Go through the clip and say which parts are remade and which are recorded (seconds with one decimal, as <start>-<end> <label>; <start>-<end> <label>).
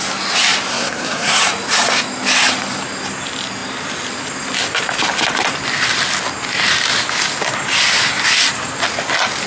0.0-0.7 recorded; 0.7-1.4 remade; 1.4-9.5 recorded